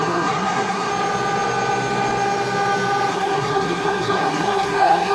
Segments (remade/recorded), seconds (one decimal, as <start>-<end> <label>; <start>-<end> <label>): 0.0-0.9 remade; 0.9-3.1 recorded; 3.1-5.1 remade